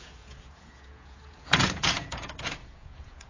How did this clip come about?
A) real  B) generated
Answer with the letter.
B